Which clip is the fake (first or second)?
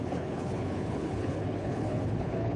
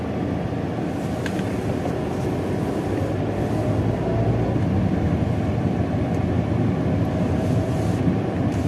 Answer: first